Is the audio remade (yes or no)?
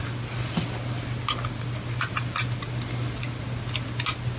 no